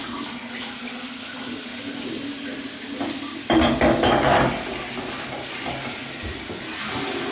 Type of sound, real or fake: real